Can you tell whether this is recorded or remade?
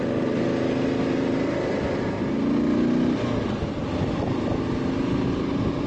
recorded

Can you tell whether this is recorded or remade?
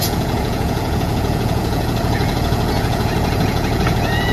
remade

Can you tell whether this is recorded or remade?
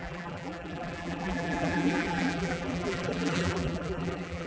remade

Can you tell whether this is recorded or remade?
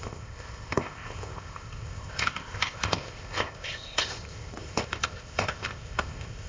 remade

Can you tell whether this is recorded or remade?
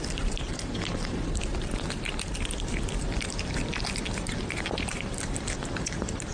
remade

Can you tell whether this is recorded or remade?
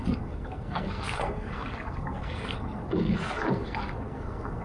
remade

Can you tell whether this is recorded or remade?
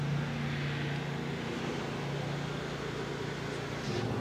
recorded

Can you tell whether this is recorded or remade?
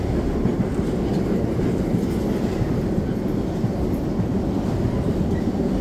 recorded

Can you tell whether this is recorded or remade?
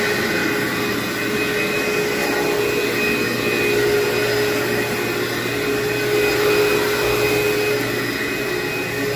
recorded